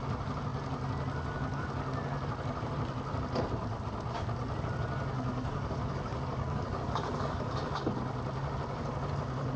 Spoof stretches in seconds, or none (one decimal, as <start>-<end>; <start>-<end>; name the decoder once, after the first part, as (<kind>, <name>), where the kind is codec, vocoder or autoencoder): 5.3-7.8 (codec, DAC)